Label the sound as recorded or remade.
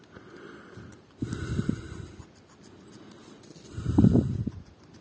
remade